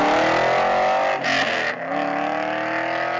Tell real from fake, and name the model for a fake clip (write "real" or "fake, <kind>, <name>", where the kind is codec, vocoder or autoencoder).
real